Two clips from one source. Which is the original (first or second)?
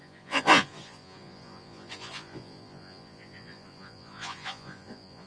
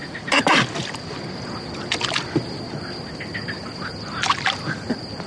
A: second